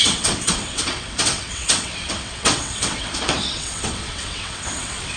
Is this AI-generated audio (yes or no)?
yes